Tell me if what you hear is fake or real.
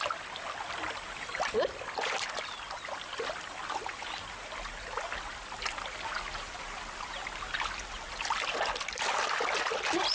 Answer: real